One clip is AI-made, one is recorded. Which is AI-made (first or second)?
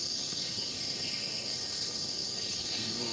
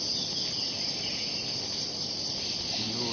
first